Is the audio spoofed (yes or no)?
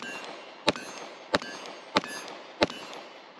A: no